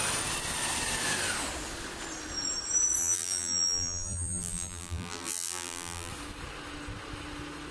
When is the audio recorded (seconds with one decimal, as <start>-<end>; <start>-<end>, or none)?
0.0-3.0; 6.1-7.7